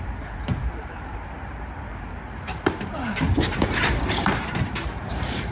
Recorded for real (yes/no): no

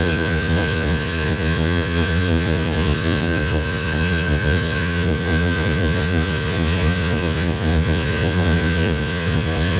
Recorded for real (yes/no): no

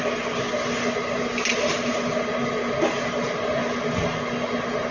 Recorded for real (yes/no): yes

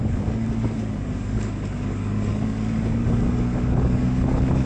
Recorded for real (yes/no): no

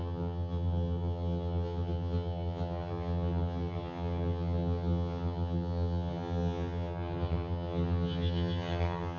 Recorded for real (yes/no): no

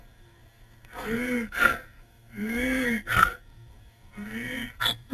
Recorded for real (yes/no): no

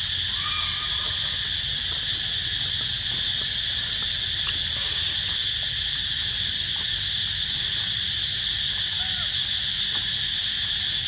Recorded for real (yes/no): yes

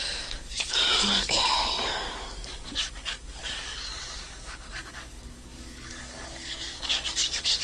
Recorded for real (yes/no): no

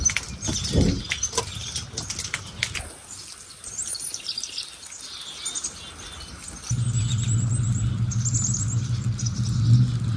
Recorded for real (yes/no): yes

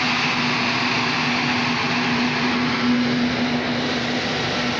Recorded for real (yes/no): yes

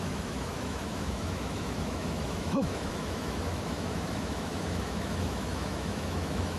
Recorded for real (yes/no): no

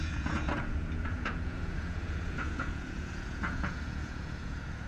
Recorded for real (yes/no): no